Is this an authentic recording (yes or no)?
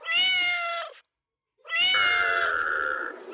yes